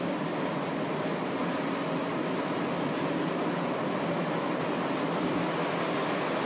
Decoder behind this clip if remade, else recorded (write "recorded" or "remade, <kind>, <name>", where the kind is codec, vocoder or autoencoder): recorded